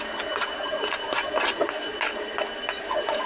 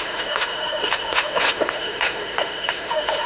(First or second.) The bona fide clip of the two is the first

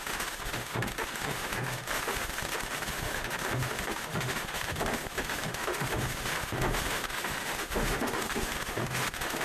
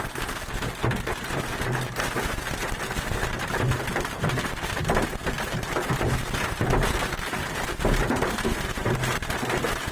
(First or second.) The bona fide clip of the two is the second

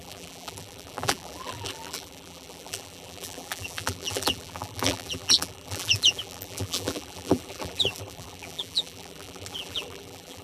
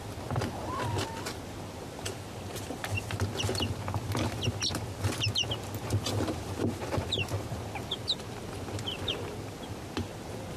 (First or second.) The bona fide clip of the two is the second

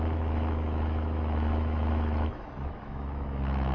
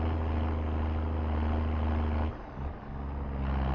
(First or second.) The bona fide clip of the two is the second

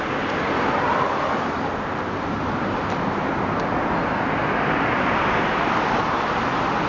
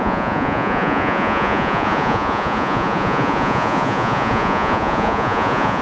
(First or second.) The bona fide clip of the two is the first